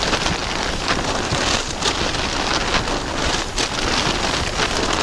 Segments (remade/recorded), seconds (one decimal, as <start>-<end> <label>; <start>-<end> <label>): 0.0-5.0 recorded